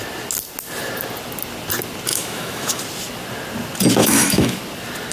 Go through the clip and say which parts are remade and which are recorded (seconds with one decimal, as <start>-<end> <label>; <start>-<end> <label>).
0.0-2.1 recorded; 2.1-2.8 remade; 2.8-4.0 recorded; 4.0-4.6 remade; 4.6-5.1 recorded

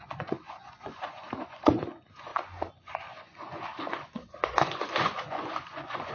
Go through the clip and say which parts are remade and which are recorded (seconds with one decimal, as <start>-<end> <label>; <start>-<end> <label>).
0.0-6.1 remade

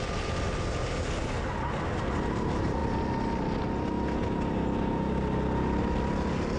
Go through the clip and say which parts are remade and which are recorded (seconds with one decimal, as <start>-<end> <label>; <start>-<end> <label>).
0.0-6.6 recorded

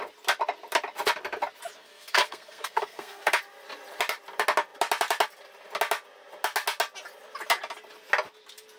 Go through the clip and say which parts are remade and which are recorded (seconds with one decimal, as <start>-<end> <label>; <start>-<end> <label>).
0.0-1.8 recorded; 1.8-3.4 remade; 3.4-8.8 recorded

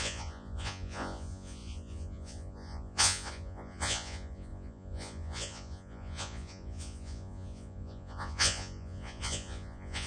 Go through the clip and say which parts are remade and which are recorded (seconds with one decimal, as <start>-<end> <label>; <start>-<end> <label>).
0.0-10.1 remade

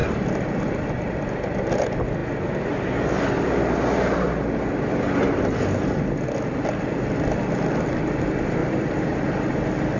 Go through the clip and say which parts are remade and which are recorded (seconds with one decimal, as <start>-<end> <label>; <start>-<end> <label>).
0.0-8.6 recorded; 8.6-10.0 remade